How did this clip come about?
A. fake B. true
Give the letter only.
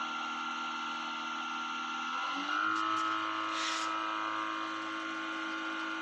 B